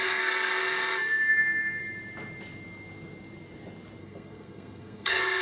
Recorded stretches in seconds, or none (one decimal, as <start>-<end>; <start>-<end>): 1.8-4.0